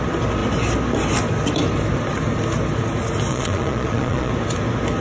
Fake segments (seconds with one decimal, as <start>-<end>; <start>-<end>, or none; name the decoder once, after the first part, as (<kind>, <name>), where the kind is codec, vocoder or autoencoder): 3.3-4.3 (vocoder, Vocos)